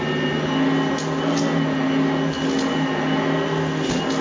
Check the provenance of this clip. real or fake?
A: real